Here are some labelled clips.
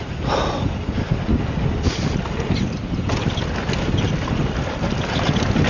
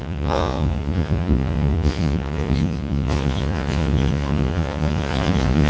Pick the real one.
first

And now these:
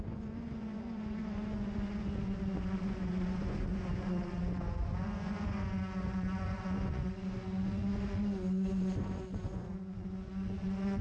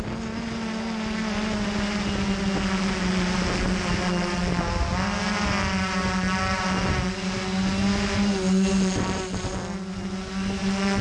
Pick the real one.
second